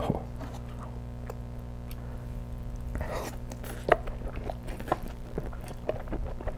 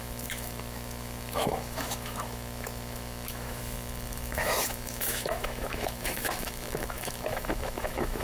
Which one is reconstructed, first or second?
second